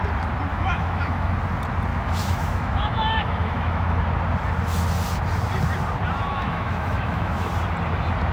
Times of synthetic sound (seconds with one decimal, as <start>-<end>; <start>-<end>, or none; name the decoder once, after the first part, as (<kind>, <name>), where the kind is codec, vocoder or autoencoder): 0.5-1.3 (autoencoder, DAC-VAE); 1.9-4.0; 6.3-7.5